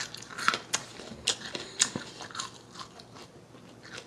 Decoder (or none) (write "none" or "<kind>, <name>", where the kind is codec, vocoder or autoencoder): none